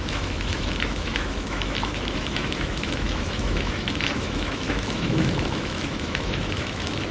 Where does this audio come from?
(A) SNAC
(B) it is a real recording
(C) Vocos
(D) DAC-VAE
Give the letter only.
D